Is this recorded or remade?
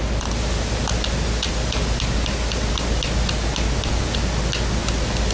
recorded